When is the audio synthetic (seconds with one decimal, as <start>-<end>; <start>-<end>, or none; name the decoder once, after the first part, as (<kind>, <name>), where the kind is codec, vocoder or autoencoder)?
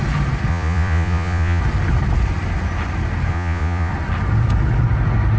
0.5-1.6 (vocoder, Vocos); 3.3-3.9